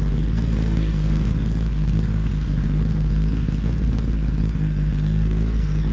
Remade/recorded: remade